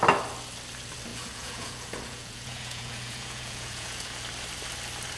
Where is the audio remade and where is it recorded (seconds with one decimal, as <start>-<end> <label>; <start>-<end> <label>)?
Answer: 0.0-1.1 recorded; 1.1-4.2 remade; 4.2-5.2 recorded

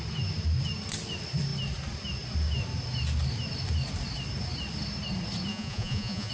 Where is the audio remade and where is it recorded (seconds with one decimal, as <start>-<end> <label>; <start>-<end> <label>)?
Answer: 0.0-5.5 recorded; 5.5-6.3 remade

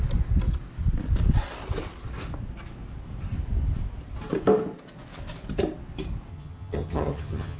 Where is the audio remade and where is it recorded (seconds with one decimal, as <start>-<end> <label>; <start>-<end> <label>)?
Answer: 0.0-6.3 recorded; 6.3-7.6 remade

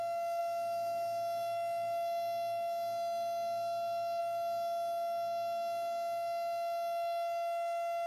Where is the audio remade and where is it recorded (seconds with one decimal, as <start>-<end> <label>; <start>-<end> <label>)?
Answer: 0.0-8.1 recorded

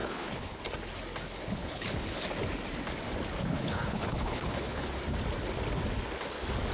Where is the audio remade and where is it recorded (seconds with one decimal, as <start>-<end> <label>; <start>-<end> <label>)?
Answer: 0.0-0.6 remade; 0.6-1.4 recorded; 1.4-2.2 remade; 2.2-3.4 recorded; 3.4-4.9 remade; 4.9-6.7 recorded

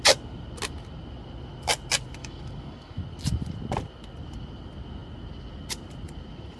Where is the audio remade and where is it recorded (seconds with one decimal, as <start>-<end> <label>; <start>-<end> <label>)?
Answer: 0.0-2.2 recorded; 2.2-3.0 remade; 3.0-6.6 recorded